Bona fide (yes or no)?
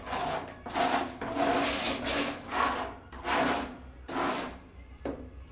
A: yes